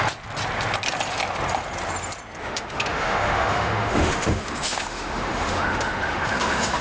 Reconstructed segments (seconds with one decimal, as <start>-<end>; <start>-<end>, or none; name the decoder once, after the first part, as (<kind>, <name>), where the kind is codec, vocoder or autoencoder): 2.4-6.8 (autoencoder, DAC-VAE)